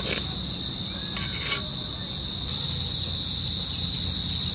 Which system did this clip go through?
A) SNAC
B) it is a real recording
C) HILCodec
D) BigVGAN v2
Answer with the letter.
B